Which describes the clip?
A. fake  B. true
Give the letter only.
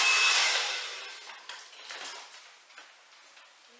B